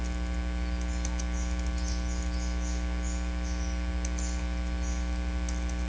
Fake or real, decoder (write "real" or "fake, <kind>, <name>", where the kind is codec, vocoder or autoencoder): real